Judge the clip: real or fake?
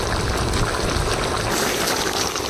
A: real